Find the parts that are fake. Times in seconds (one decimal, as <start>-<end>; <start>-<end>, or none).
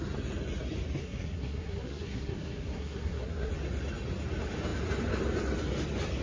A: 1.0-3.5